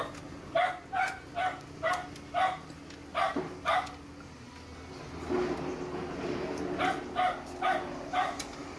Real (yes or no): yes